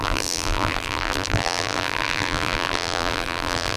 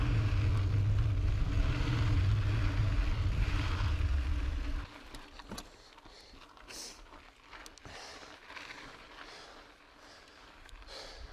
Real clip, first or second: second